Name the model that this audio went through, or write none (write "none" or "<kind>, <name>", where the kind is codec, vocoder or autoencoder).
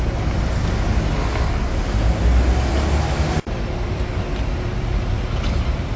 none